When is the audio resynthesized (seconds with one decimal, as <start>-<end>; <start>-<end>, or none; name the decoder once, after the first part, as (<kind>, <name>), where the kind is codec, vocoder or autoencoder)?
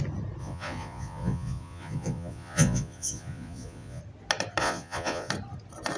0.4-4.0 (vocoder, Vocos); 4.6-5.3